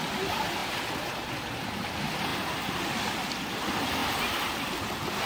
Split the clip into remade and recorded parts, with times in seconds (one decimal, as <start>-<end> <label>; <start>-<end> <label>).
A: 0.0-2.3 recorded; 2.3-2.8 remade; 2.8-5.3 recorded